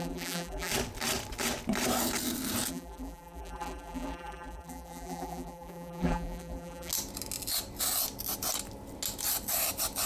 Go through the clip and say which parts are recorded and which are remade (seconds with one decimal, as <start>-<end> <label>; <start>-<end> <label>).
0.0-0.7 remade; 0.7-2.7 recorded; 2.7-6.9 remade; 6.9-10.1 recorded